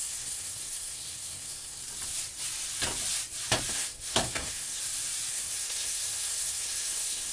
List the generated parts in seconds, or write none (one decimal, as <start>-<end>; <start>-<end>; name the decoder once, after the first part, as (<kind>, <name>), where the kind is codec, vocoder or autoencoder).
0.0-1.8 (codec, SNAC); 3.7-4.8; 5.3-7.3